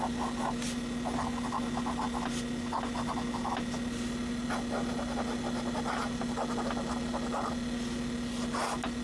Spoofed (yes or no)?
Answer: no